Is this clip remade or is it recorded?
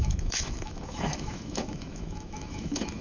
remade